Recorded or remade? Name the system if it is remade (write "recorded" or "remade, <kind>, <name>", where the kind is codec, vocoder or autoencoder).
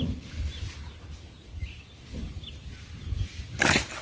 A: recorded